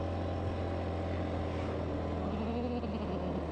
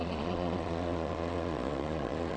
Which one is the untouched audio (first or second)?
first